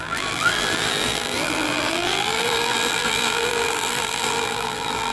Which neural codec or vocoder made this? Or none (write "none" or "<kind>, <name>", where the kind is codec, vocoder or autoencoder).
vocoder, BigVGAN v2